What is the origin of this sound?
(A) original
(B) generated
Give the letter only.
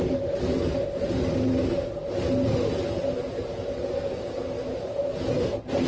A